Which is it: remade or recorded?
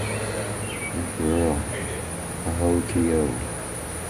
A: recorded